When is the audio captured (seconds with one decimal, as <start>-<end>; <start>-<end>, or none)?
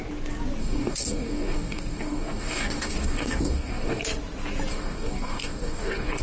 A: 0.0-0.6; 4.0-4.7